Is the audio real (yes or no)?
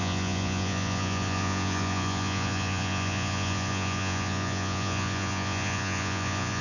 no